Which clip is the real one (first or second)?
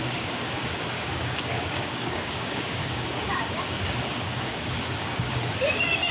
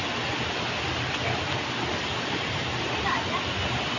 second